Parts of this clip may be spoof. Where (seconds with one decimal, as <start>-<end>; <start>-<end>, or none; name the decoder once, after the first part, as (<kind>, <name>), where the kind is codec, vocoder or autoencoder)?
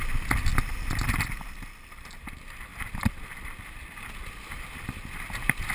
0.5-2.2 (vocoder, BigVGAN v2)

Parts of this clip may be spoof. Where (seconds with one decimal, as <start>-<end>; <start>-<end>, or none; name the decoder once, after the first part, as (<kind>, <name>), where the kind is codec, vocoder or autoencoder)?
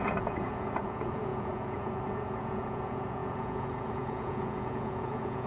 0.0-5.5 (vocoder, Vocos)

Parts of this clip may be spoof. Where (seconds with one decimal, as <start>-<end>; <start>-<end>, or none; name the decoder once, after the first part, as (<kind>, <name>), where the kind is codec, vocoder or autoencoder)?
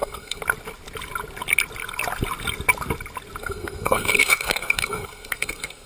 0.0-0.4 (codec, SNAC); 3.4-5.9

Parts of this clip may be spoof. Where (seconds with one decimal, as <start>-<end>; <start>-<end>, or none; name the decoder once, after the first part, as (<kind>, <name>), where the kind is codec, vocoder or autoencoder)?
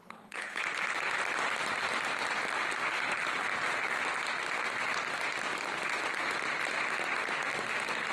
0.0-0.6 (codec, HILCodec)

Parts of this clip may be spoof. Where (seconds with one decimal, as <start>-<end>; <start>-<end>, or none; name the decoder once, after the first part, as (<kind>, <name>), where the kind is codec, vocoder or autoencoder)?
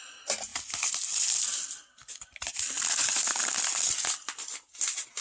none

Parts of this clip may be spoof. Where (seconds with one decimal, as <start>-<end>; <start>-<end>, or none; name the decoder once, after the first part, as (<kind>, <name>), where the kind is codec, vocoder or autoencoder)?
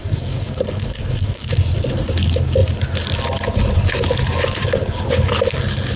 0.0-1.5 (codec, DAC)